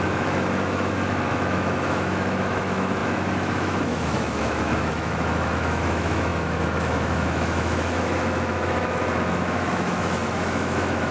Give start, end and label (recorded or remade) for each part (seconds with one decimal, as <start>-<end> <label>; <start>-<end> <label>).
0.0-11.1 remade